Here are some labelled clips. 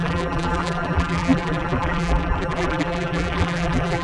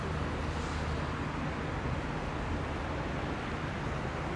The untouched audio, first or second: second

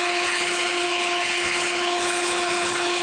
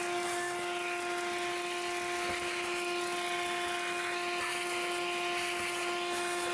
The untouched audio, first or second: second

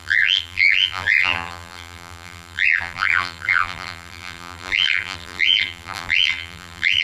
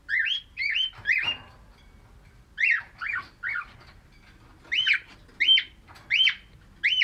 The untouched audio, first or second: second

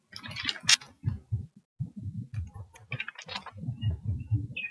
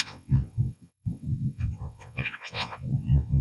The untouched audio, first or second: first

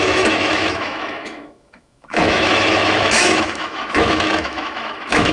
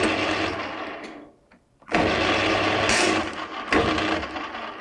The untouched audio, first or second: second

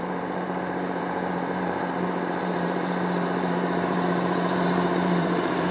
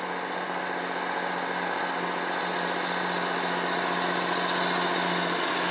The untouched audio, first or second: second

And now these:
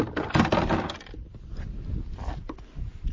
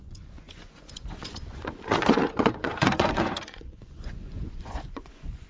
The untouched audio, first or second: first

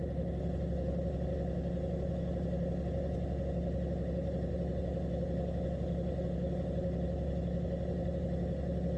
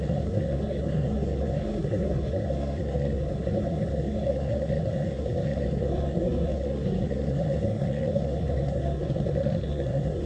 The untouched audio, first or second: first